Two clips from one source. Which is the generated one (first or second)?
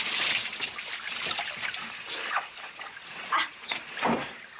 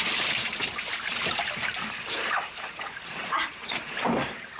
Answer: second